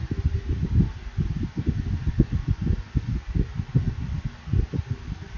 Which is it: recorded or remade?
recorded